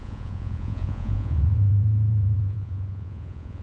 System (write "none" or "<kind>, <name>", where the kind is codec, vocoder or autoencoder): vocoder, Vocos